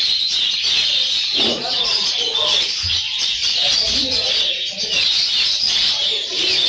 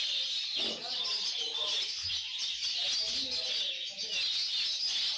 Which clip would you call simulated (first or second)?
first